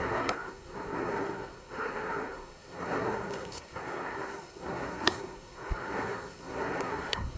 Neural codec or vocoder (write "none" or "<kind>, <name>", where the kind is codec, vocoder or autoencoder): codec, SNAC